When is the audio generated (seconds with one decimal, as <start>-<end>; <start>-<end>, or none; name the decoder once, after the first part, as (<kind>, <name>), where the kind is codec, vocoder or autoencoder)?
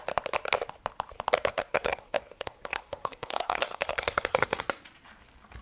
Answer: 1.5-4.6 (codec, SNAC)